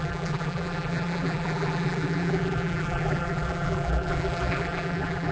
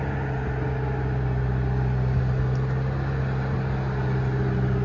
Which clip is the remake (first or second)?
first